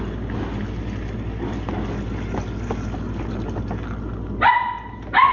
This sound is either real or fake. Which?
real